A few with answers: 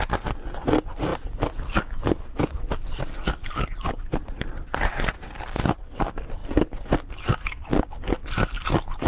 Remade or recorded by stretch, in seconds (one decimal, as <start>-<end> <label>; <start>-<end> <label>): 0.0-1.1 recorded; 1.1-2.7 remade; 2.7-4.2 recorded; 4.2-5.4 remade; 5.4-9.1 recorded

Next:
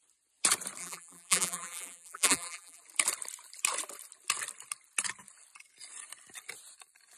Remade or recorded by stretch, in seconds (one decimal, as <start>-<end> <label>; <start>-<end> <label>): 0.0-0.8 recorded; 0.8-2.8 remade; 2.8-7.2 recorded

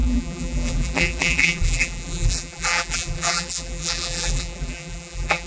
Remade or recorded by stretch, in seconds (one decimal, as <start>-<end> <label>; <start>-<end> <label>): 0.0-5.5 remade

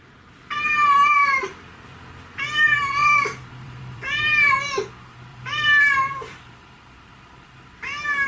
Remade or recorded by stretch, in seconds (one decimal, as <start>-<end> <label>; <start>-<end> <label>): 0.0-3.0 recorded; 3.0-4.6 remade; 4.6-5.3 recorded; 5.3-7.1 remade; 7.1-8.3 recorded

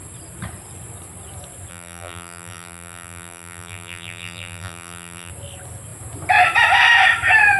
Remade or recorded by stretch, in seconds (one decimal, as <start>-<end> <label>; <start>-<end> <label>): 0.0-1.7 recorded; 1.7-5.3 remade; 5.3-7.6 recorded